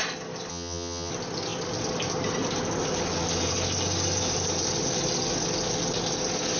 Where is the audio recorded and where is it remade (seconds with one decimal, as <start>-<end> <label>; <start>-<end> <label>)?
0.0-0.5 recorded; 0.5-1.1 remade; 1.1-6.6 recorded